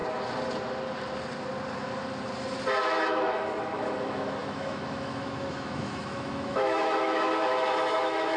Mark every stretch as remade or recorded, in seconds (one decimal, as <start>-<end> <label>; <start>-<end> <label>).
0.0-2.8 recorded; 2.8-8.4 remade